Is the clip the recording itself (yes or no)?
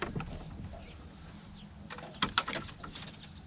yes